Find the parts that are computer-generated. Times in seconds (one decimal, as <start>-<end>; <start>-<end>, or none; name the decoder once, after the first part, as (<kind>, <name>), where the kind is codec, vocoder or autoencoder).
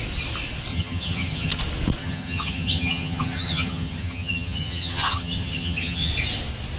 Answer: 0.7-1.6 (vocoder, HiFi-GAN); 2.0-6.1